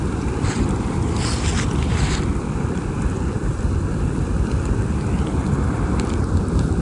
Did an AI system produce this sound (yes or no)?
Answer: no